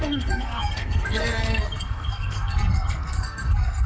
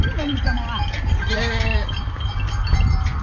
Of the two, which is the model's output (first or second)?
first